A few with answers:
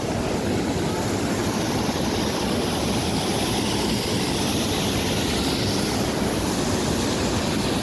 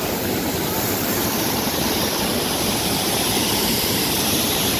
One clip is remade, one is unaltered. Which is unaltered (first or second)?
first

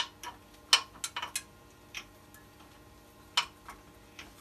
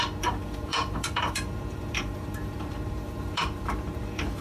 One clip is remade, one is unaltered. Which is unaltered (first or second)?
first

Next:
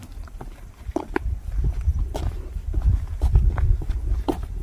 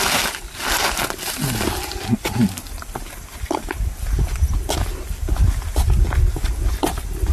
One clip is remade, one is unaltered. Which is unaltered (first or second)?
second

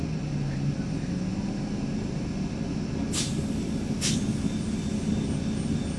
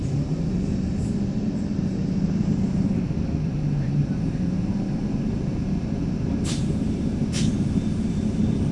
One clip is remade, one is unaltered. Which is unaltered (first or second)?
first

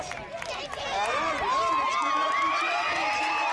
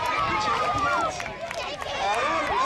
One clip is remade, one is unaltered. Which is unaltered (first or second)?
first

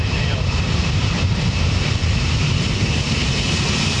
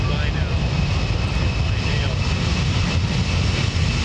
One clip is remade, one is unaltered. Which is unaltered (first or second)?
second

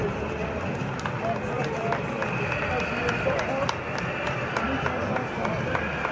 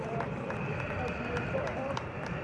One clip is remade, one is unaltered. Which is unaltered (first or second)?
first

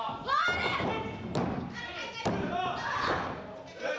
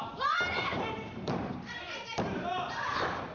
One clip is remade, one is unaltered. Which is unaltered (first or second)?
first